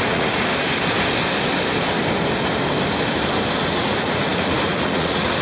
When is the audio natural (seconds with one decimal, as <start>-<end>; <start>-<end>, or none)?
0.5-3.7